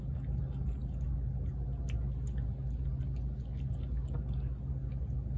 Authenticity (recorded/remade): recorded